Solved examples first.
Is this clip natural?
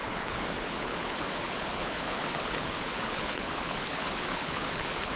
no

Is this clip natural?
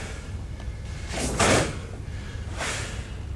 yes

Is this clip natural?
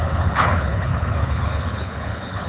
no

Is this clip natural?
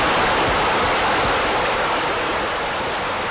yes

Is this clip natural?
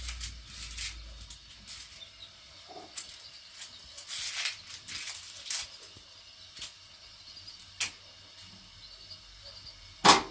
yes